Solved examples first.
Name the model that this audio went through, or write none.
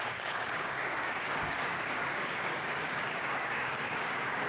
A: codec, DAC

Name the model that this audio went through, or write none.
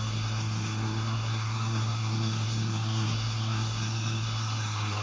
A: codec, SNAC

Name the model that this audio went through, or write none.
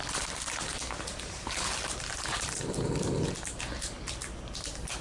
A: vocoder, BigVGAN v2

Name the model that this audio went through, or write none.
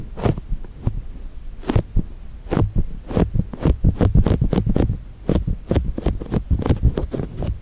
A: none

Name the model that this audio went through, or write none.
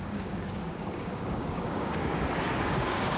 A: codec, DAC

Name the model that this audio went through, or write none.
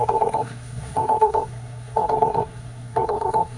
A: codec, SNAC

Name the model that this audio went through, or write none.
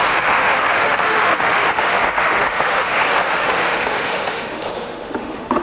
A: autoencoder, DAC-VAE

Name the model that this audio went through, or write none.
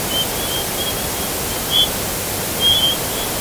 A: none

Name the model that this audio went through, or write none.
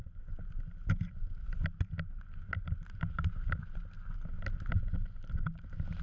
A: none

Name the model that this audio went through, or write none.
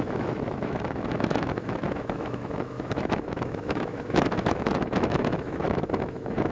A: autoencoder, DAC-VAE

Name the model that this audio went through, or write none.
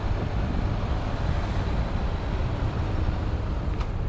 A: none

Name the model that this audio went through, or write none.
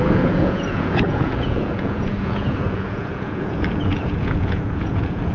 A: vocoder, Vocos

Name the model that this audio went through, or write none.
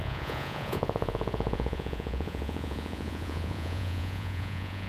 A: vocoder, Vocos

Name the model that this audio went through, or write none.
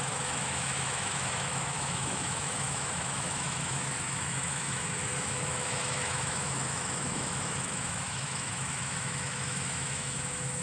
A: autoencoder, DAC-VAE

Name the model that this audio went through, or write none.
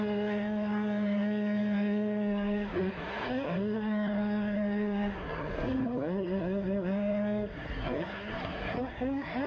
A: codec, SNAC